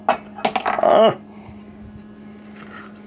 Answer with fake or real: real